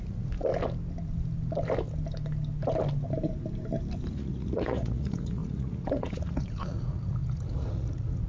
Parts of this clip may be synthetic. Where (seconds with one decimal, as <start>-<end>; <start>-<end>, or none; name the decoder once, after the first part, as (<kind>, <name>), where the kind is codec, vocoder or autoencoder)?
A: 0.0-0.5 (vocoder, Vocos); 4.1-8.3

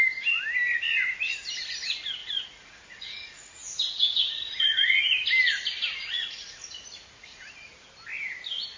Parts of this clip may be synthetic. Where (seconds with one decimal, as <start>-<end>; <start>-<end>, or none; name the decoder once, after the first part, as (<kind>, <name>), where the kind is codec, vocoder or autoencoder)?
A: 2.2-5.0 (vocoder, Vocos); 5.7-7.7

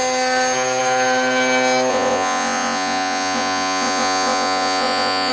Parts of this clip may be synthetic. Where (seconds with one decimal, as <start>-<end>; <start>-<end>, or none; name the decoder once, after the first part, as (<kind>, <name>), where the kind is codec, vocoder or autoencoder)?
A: 1.9-5.3 (vocoder, Vocos)

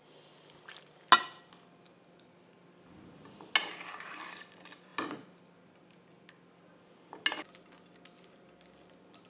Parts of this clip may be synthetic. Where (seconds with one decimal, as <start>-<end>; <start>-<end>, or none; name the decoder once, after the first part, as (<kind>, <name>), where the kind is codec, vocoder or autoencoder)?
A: none

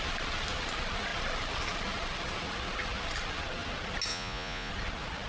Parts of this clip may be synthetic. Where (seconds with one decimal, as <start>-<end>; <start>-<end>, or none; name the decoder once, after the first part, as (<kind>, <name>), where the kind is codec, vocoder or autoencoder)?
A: 4.1-4.7 (vocoder, Vocos)

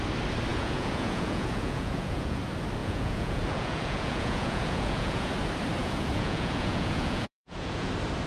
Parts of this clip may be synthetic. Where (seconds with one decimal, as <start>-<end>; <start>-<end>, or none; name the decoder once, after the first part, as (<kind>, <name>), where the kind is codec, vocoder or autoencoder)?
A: 0.5-2.4 (vocoder, Vocos); 2.8-5.3; 5.8-7.9